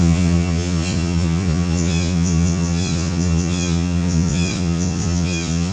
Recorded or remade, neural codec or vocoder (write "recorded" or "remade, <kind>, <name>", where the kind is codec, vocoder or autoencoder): remade, vocoder, Vocos